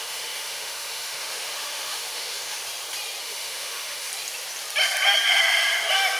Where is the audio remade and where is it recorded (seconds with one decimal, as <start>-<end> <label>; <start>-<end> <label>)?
0.0-2.6 remade; 2.6-3.2 recorded; 3.2-4.1 remade; 4.1-6.2 recorded